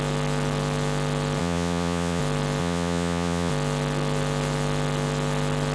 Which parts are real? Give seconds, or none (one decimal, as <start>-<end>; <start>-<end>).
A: 0.0-1.4; 2.2-2.6; 3.5-5.7